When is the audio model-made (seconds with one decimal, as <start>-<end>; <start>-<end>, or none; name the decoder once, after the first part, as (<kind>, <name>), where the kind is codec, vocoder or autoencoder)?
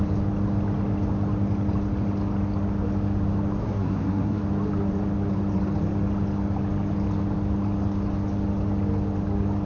3.6-4.4 (codec, SNAC)